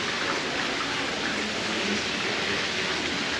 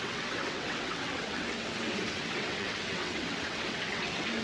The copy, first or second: second